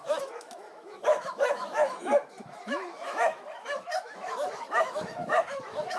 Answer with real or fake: fake